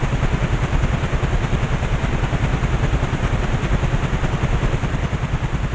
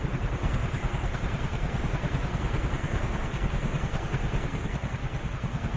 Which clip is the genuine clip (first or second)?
first